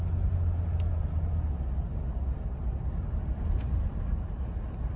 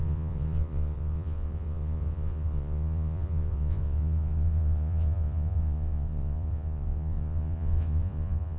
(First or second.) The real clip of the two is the first